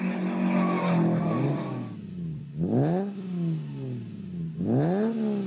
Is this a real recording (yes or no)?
yes